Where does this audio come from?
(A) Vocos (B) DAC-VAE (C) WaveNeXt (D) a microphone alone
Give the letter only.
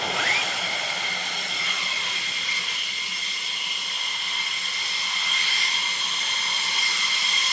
D